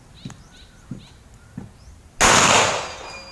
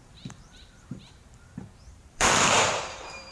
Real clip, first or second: first